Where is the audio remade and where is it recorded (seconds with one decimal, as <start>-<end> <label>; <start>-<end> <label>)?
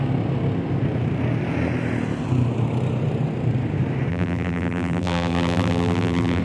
0.0-4.1 recorded; 4.1-6.4 remade